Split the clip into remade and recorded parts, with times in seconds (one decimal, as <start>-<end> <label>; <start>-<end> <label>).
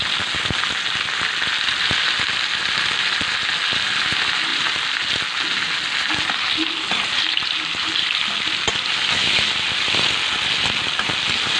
0.0-4.5 recorded; 4.5-5.0 remade; 5.0-7.4 recorded; 7.4-8.3 remade; 8.3-11.6 recorded